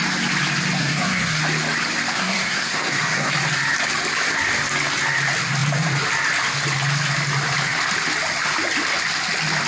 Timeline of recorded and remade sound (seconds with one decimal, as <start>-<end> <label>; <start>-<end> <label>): 0.0-0.8 recorded; 0.8-1.4 remade; 1.4-2.1 recorded; 2.1-3.3 remade; 3.3-9.7 recorded